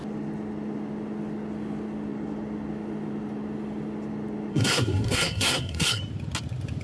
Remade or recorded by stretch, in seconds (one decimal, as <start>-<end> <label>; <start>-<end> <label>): 0.0-4.5 recorded; 4.5-6.0 remade; 6.0-6.8 recorded